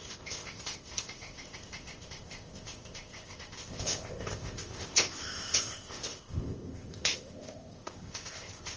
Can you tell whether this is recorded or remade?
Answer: remade